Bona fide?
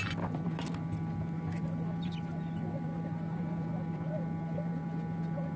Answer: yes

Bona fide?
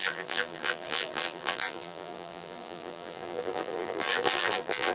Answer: no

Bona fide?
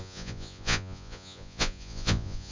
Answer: no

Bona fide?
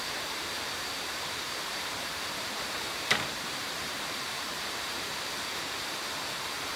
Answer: no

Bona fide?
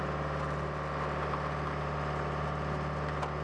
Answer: yes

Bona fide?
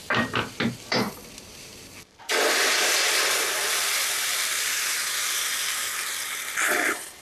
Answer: no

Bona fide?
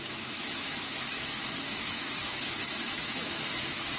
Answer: no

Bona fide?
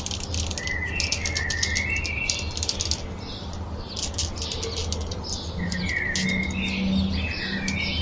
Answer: yes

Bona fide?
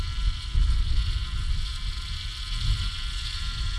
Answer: yes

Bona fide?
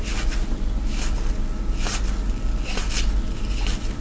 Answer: yes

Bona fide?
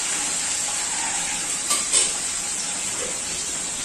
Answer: no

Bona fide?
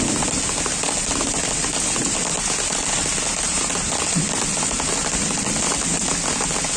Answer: yes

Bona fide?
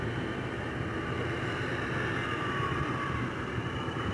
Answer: yes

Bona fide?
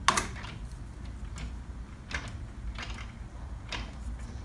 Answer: yes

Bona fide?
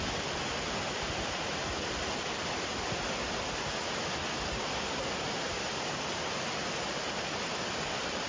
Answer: yes